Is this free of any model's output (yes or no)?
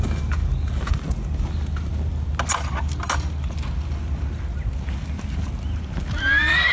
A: yes